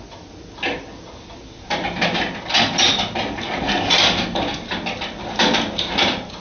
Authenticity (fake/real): real